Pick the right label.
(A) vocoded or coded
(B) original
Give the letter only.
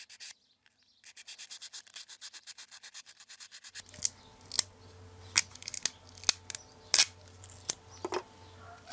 B